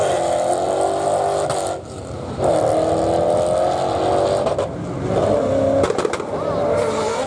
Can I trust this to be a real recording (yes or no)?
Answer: yes